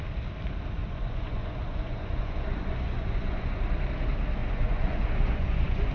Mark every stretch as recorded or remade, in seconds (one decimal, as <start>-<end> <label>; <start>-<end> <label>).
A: 0.0-0.8 recorded; 0.8-3.6 remade; 3.6-4.4 recorded; 4.4-5.9 remade